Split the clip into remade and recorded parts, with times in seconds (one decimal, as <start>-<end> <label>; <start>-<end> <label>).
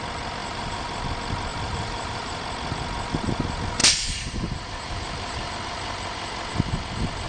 0.0-0.4 recorded; 0.4-1.0 remade; 1.0-1.5 recorded; 1.5-2.4 remade; 2.4-3.8 recorded; 3.8-5.5 remade; 5.5-7.3 recorded